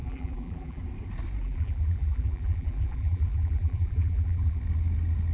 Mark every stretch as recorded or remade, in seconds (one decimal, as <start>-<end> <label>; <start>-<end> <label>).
0.0-0.8 remade; 0.8-1.4 recorded; 1.4-4.6 remade; 4.6-5.3 recorded